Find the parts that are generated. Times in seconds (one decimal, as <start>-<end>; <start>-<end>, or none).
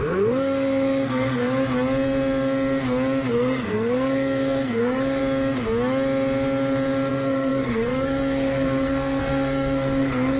0.0-1.6; 3.3-5.2; 7.1-10.4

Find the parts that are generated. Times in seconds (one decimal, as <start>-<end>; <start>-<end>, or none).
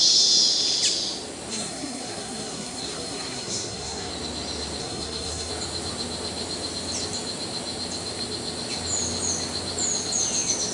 1.5-4.1; 4.8-5.5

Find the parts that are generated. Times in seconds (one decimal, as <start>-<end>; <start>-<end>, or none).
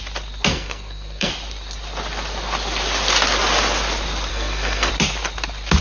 0.5-1.3; 4.3-4.9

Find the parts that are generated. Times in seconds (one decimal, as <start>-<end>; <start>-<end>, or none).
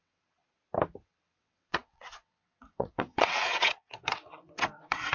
0.0-0.4; 1.0-5.1